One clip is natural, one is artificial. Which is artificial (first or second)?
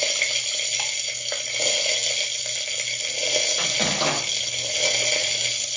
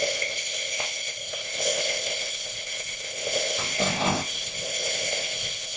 second